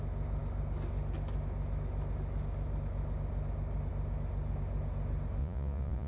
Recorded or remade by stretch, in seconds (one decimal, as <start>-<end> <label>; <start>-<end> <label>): 0.0-5.4 recorded; 5.4-6.1 remade